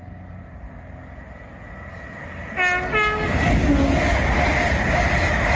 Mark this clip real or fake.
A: real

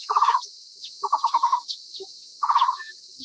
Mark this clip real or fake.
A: fake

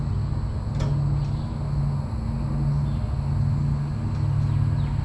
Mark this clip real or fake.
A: real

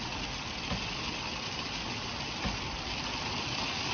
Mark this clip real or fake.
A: real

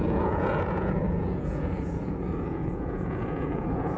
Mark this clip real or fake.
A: fake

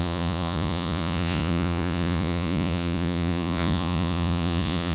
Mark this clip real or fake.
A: fake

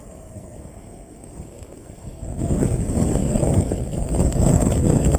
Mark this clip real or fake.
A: fake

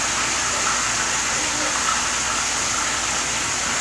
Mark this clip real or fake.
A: real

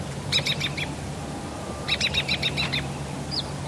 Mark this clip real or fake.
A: real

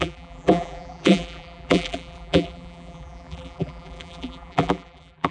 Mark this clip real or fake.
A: fake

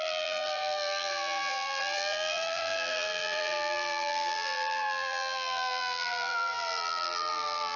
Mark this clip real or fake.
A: fake